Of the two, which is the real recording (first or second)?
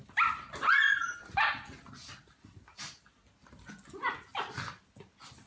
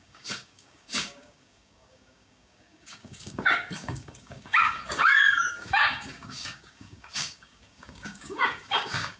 first